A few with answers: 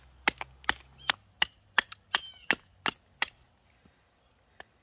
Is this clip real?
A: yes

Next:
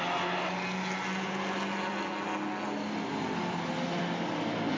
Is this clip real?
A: yes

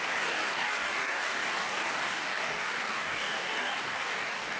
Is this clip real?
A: no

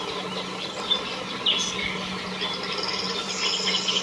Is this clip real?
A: yes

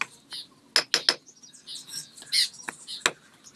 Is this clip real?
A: yes